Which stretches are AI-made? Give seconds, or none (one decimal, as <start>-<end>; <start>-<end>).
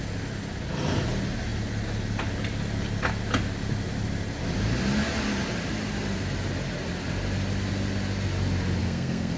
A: 8.8-9.4